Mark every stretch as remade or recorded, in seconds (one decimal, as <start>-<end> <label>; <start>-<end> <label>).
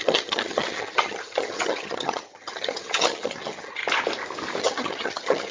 0.0-3.8 remade; 3.8-4.6 recorded; 4.6-5.5 remade